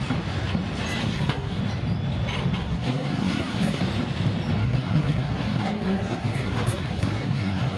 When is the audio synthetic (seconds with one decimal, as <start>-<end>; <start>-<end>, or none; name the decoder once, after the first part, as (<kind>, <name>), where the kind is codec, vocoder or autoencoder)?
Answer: 1.0-1.6 (codec, SNAC); 2.6-3.8; 4.6-7.8